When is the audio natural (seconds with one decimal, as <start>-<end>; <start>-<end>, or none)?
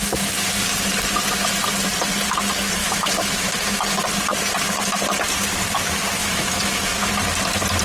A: 0.0-2.8; 3.5-6.2; 7.1-7.8